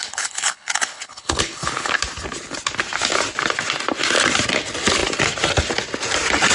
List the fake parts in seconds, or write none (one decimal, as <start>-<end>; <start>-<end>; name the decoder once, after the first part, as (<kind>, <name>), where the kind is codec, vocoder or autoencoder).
0.0-1.9 (codec, HILCodec)